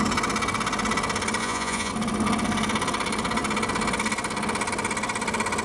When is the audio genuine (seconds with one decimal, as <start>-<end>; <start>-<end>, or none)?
0.0-1.4; 1.9-5.6